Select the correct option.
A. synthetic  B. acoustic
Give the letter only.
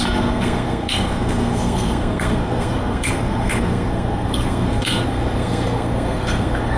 A